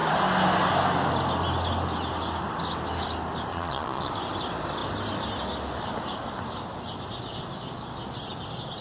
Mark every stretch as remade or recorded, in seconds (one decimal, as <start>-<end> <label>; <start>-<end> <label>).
0.0-3.5 recorded; 3.5-4.1 remade; 4.1-8.8 recorded

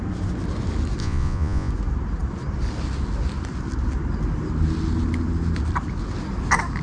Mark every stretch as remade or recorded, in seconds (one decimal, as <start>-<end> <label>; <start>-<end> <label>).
0.0-1.0 recorded; 1.0-1.7 remade; 1.7-6.8 recorded